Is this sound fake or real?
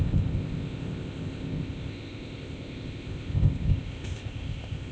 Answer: fake